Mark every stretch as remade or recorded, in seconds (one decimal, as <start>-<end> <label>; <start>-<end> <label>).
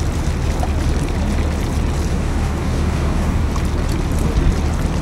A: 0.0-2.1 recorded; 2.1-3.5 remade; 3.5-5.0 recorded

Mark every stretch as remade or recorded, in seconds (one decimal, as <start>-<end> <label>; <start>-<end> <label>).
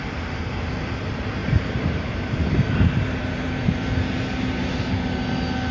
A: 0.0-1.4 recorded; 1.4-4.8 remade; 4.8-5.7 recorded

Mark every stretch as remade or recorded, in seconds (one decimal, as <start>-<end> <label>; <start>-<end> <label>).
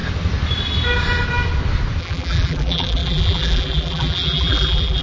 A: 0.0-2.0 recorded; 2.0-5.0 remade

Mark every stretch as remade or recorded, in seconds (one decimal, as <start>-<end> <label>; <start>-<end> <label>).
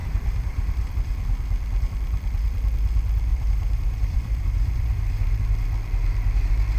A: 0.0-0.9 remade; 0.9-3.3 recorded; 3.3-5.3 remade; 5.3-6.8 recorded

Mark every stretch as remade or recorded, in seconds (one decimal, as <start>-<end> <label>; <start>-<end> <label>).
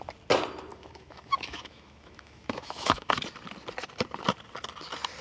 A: 0.0-0.7 recorded; 0.7-3.1 remade; 3.1-5.2 recorded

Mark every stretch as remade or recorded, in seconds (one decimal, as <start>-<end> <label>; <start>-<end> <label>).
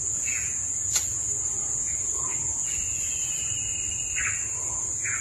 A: 0.0-3.7 remade; 3.7-4.7 recorded; 4.7-5.2 remade